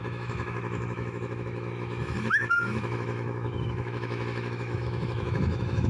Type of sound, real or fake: fake